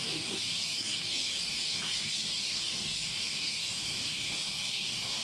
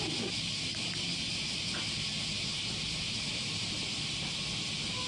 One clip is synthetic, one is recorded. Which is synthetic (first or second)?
first